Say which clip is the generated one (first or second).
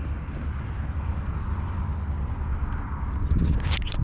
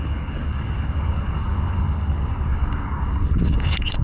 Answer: second